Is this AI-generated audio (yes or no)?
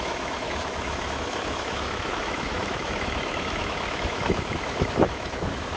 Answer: yes